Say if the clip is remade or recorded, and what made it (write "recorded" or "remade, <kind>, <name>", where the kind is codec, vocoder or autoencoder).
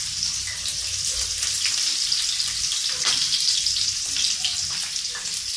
remade, vocoder, BigVGAN v2